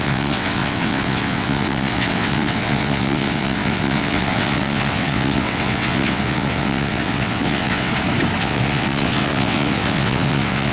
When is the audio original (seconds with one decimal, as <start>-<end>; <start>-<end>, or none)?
7.9-8.4